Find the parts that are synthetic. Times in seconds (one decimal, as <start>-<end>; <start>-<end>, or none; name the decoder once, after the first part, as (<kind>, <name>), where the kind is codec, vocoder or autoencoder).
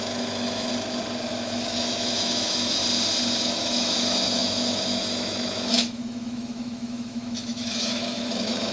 0.0-0.7 (autoencoder, DAC-VAE); 1.3-2.8; 3.4-8.7